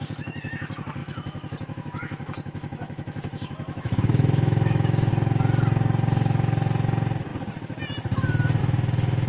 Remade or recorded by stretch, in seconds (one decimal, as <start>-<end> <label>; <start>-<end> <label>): 0.0-1.0 recorded; 1.0-5.1 remade; 5.1-8.6 recorded; 8.6-9.3 remade